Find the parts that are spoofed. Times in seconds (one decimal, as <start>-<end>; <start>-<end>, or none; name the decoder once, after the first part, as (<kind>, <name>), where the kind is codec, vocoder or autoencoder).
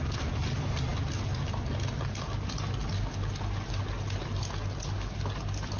none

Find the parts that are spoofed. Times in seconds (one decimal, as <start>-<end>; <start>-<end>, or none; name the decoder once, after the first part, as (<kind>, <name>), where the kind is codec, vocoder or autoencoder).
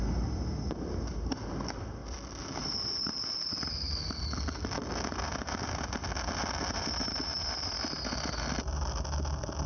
2.0-4.2 (vocoder, BigVGAN v2); 7.3-7.9